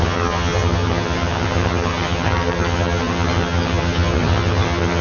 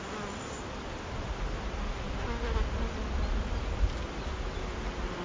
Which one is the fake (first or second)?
first